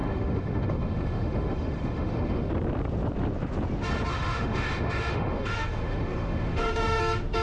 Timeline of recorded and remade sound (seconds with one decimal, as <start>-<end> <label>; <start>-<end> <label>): 0.0-2.5 remade; 2.5-4.1 recorded; 4.1-7.0 remade; 7.0-7.4 recorded